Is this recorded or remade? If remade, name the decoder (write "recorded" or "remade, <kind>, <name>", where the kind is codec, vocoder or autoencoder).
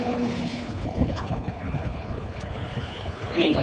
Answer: remade, codec, HILCodec